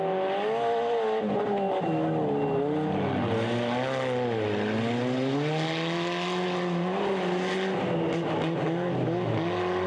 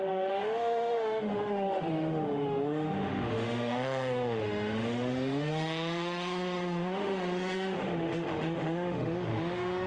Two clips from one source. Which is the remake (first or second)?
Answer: second